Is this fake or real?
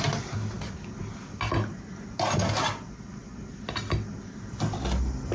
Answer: real